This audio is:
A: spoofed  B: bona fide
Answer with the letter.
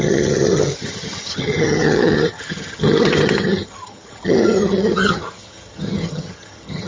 A